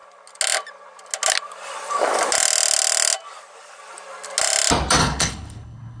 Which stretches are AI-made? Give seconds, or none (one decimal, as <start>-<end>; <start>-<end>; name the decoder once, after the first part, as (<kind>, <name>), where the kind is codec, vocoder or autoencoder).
5.0-6.0 (codec, HILCodec)